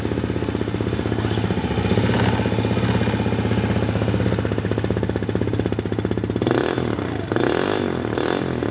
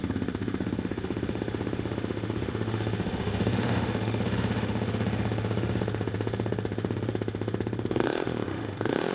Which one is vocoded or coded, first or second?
second